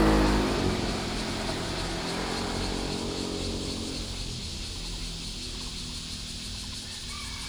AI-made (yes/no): no